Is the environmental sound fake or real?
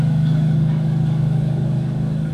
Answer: fake